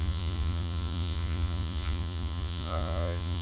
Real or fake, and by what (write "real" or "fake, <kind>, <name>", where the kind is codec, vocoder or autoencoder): fake, vocoder, Vocos